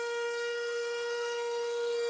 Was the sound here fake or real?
fake